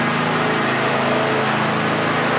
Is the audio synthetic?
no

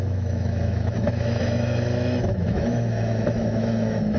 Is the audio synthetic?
yes